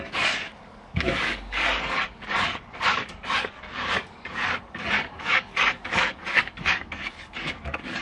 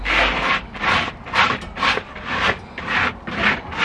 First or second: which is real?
second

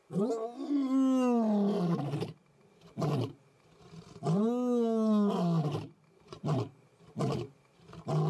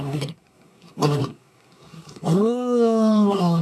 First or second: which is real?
first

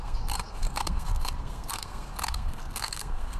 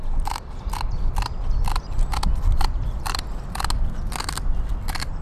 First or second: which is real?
second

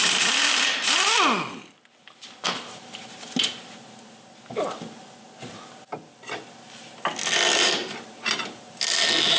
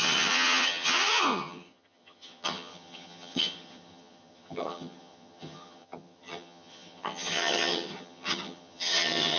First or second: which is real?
first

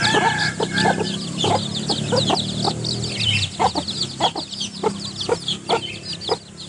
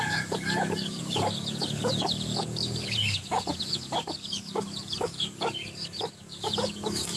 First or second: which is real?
first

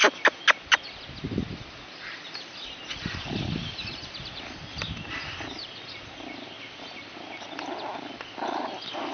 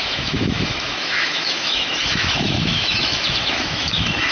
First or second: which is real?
first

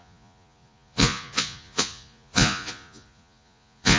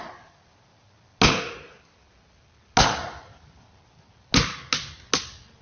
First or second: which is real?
second